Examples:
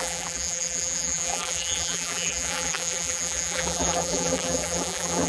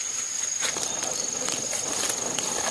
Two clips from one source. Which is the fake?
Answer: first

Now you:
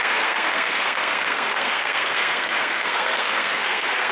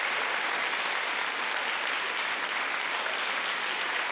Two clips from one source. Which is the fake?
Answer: first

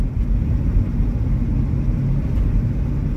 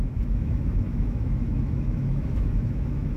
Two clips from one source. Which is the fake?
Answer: second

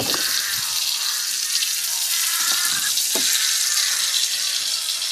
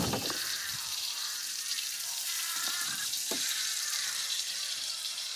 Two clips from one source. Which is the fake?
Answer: second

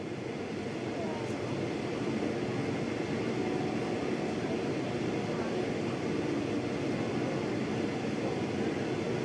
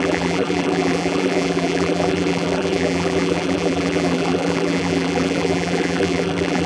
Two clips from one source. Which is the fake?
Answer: second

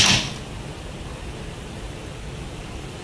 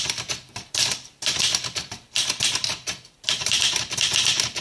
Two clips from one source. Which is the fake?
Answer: second